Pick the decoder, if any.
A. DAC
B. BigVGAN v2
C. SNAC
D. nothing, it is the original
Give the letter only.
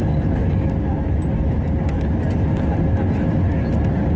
D